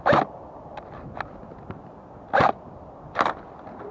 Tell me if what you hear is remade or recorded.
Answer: recorded